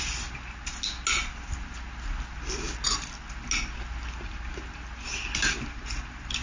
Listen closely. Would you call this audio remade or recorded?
recorded